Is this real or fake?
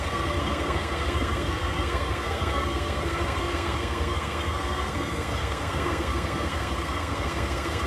fake